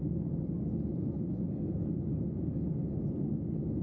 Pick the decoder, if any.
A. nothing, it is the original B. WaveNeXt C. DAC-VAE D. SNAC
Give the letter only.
A